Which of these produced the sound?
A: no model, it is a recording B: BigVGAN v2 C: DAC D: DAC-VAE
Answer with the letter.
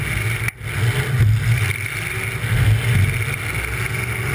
A